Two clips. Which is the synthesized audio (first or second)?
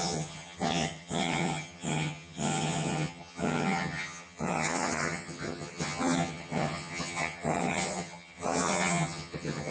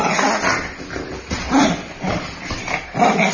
first